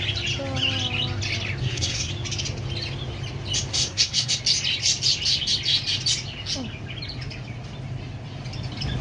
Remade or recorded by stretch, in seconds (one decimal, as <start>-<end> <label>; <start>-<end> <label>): 0.0-1.6 recorded; 1.6-2.1 remade; 2.1-3.7 recorded; 3.7-4.4 remade; 4.4-9.0 recorded